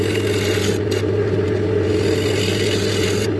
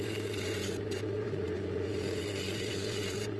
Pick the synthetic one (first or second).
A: second